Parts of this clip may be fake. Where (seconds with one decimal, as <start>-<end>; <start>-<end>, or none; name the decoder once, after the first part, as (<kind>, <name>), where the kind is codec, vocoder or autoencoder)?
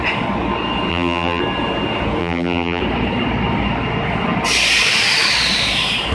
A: 0.9-1.4 (vocoder, BigVGAN v2); 2.2-2.8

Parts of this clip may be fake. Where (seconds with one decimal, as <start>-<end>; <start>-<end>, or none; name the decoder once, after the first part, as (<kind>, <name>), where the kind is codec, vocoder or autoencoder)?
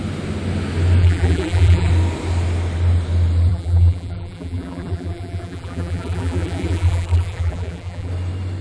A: 1.0-1.9 (vocoder, BigVGAN v2); 3.5-8.1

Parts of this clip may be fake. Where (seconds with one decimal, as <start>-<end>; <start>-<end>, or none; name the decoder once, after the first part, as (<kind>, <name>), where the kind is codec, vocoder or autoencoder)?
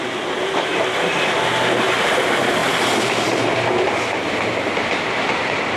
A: 0.0-0.7 (vocoder, BigVGAN v2); 2.2-2.6; 4.9-5.8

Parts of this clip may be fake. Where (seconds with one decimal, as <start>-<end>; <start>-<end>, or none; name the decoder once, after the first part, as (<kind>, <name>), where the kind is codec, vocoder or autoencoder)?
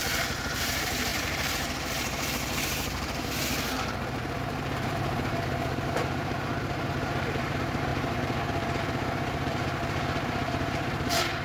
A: 0.0-11.4 (vocoder, BigVGAN v2)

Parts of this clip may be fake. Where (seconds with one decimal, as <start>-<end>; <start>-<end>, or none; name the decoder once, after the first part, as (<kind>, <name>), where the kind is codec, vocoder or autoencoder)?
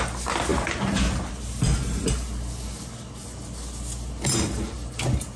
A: none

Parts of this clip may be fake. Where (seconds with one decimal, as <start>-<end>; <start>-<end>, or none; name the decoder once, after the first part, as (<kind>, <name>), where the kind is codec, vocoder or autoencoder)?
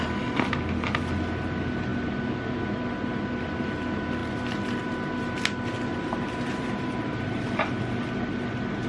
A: 5.9-7.8 (vocoder, BigVGAN v2)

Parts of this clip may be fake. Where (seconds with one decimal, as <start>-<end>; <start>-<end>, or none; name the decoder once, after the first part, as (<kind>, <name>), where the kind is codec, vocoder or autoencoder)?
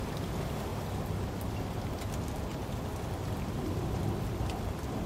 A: 2.5-4.3 (vocoder, BigVGAN v2)